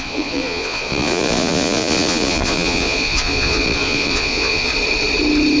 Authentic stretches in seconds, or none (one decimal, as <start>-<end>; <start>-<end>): 4.7-5.6